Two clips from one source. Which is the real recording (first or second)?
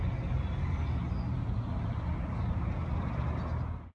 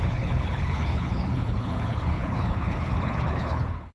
first